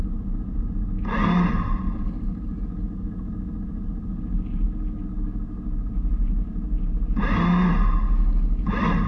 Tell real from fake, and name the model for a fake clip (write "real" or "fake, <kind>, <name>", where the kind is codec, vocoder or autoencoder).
real